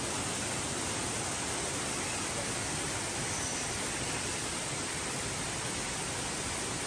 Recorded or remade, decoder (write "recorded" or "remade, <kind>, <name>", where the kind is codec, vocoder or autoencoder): recorded